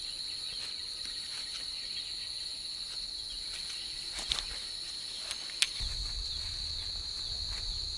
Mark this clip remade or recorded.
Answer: recorded